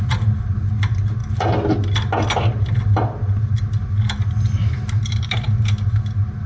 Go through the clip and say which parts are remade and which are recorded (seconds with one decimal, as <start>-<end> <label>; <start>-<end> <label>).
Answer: 0.0-6.5 recorded